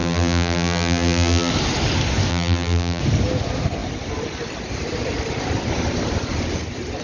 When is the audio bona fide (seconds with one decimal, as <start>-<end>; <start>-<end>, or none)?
1.5-2.3; 3.0-7.0